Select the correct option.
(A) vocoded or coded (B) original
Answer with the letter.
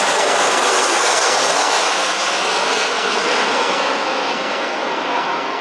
A